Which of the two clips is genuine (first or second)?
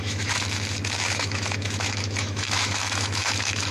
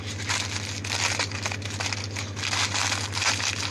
second